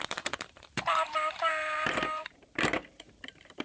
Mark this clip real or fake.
fake